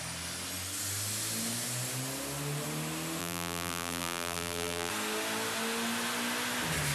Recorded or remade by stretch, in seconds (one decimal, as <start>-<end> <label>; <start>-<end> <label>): 0.0-3.2 recorded; 3.2-4.9 remade; 4.9-6.9 recorded